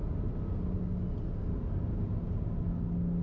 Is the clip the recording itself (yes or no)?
yes